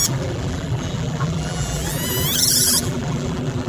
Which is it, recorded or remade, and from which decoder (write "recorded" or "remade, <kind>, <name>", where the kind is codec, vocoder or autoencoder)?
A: remade, vocoder, BigVGAN v2